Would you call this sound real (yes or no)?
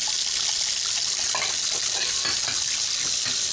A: yes